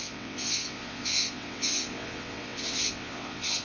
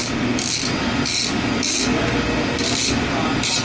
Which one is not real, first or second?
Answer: first